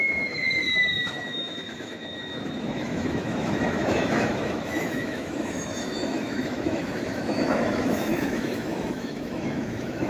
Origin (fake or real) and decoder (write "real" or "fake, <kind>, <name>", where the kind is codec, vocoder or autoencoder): fake, autoencoder, DAC-VAE